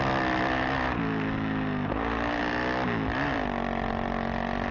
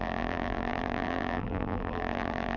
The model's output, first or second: second